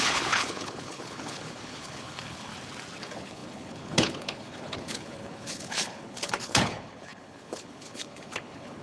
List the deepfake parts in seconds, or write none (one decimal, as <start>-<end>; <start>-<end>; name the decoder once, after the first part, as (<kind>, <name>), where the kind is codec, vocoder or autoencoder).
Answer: 0.0-2.5 (codec, HILCodec); 3.0-8.8